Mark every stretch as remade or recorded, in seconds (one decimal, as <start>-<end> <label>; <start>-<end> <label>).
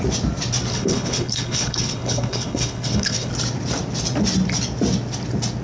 0.0-0.7 recorded; 0.7-3.3 remade; 3.3-5.6 recorded